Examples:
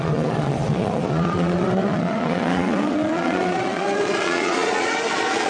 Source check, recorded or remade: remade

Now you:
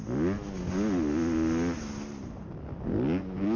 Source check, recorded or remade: recorded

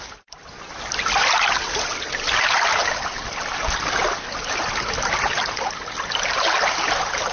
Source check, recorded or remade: recorded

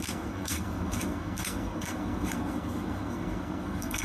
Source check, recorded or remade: remade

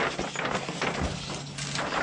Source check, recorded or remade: recorded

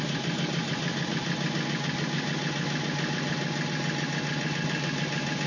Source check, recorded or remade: recorded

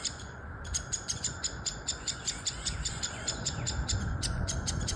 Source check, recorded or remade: remade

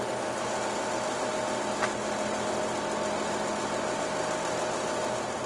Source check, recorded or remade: recorded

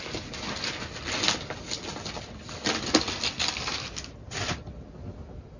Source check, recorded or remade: recorded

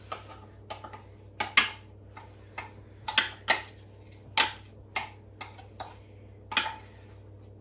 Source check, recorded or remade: recorded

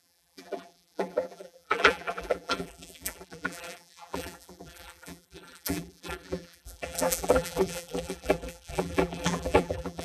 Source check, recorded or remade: remade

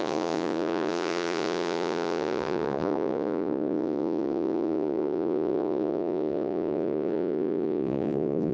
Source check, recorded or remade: remade